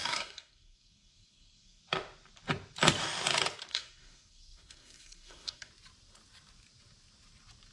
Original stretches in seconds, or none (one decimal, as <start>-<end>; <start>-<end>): 1.8-3.7; 5.7-7.7